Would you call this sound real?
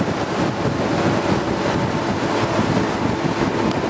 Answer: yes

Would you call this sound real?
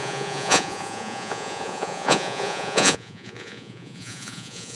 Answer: no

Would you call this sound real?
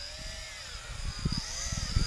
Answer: yes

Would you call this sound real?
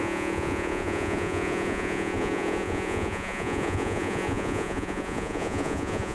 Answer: no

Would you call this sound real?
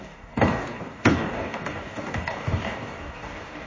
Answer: no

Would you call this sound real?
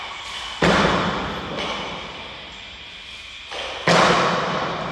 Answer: yes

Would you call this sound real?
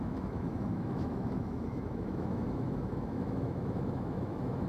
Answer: no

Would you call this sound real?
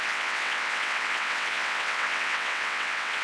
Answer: no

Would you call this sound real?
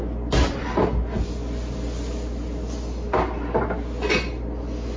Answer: yes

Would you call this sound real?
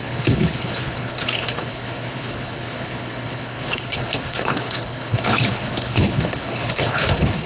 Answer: no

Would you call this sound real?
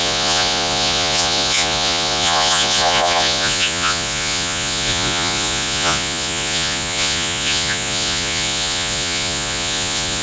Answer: no